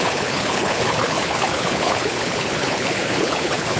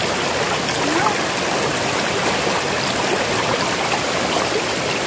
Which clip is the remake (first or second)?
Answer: first